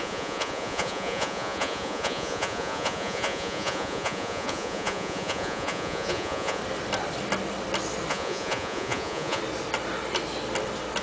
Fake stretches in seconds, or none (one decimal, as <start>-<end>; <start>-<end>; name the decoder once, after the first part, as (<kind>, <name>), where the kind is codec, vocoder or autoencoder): 0.0-6.6 (vocoder, Vocos); 8.1-9.4